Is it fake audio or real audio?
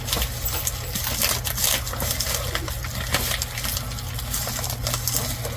real